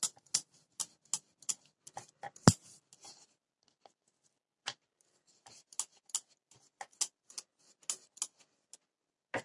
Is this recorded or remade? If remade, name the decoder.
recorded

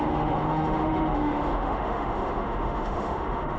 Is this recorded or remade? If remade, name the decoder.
remade, autoencoder, DAC-VAE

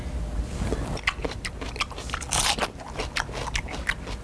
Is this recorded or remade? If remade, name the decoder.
recorded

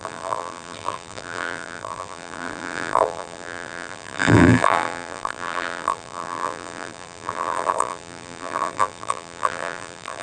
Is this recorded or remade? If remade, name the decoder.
remade, vocoder, BigVGAN v2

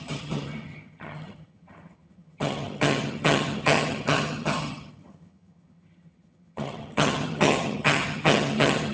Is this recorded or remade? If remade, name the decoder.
remade, vocoder, HiFi-GAN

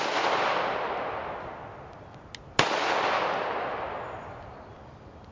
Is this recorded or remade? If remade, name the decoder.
recorded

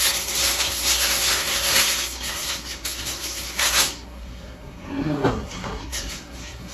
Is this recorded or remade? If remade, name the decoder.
remade, codec, SNAC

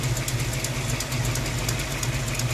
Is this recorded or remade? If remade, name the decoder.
recorded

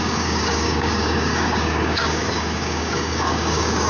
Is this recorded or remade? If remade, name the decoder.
remade, codec, DAC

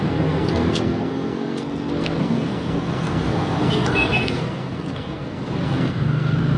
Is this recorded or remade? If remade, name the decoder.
remade, codec, SNAC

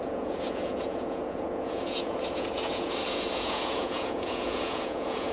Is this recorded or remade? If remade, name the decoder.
remade, vocoder, Vocos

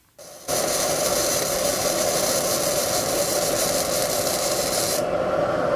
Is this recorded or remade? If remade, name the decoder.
recorded